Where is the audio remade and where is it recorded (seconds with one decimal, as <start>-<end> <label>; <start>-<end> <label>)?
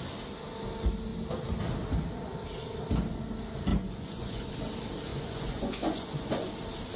0.0-3.7 recorded; 3.7-4.5 remade; 4.5-5.1 recorded; 5.1-6.5 remade; 6.5-7.0 recorded